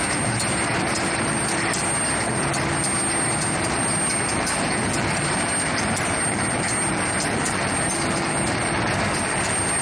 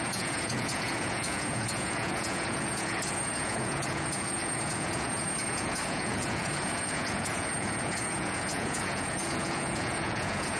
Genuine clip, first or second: first